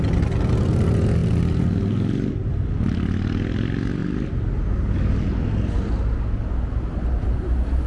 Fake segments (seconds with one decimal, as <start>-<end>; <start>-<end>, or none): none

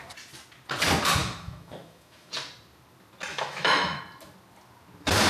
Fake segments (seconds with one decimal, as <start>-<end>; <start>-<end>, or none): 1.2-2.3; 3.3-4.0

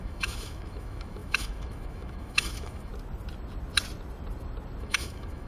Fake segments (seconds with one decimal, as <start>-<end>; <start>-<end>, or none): 0.0-2.9; 4.8-5.5